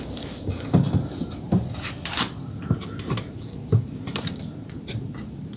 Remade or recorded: remade